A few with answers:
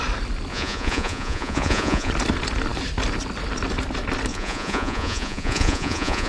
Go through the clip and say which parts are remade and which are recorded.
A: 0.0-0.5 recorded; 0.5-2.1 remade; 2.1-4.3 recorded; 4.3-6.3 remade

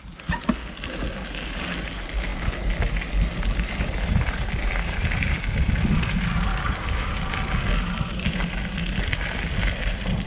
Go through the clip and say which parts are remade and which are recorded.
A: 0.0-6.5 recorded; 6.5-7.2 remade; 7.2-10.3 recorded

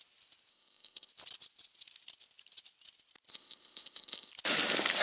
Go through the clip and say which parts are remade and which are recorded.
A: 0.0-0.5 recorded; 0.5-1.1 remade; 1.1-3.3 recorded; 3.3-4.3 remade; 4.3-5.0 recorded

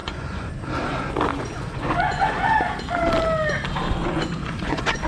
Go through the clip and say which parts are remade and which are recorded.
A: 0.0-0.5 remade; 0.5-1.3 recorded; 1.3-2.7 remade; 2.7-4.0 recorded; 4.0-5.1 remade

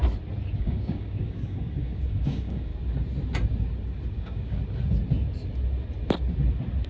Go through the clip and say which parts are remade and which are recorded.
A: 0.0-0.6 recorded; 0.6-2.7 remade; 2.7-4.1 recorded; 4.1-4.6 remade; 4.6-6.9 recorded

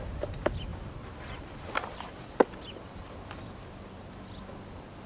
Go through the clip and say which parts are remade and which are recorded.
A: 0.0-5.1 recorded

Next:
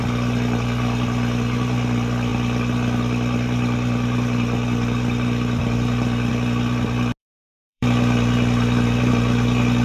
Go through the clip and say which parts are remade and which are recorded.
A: 0.0-2.3 recorded; 2.3-6.3 remade; 6.3-7.2 recorded; 7.2-9.1 remade; 9.1-9.8 recorded

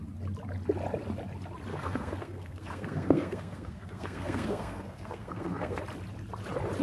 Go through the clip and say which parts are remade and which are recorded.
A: 0.0-1.7 recorded; 1.7-5.8 remade; 5.8-6.8 recorded